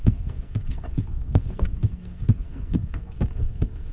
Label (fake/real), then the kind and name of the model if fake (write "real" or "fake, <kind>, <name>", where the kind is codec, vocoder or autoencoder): fake, codec, SNAC